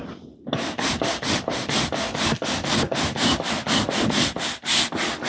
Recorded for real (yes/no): yes